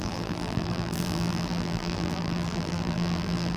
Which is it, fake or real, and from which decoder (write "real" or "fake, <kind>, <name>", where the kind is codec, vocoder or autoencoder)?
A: fake, vocoder, BigVGAN v2